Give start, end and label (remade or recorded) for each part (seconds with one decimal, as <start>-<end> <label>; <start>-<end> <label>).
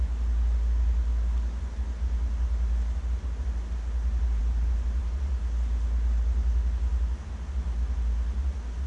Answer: 0.0-8.9 recorded